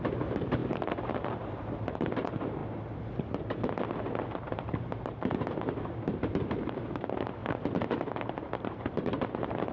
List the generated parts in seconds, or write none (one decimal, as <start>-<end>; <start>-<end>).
0.0-2.6; 4.4-7.4; 8.2-9.7